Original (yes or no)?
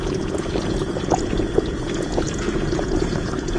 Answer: no